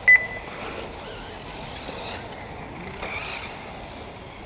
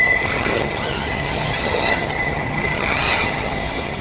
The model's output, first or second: second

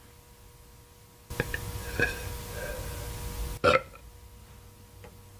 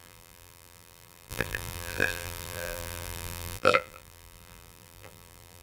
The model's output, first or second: second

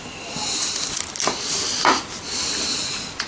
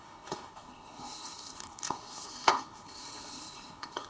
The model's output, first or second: second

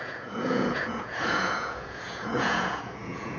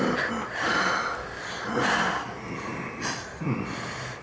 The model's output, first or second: first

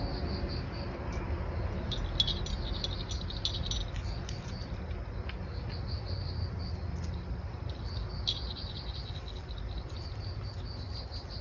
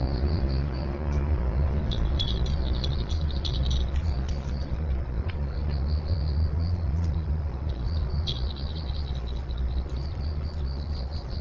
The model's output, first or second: second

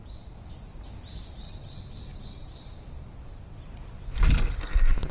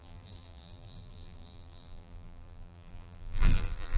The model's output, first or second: second